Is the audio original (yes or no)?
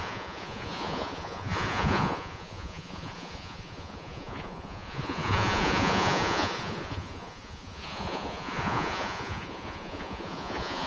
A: no